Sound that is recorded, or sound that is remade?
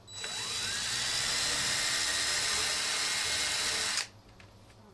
recorded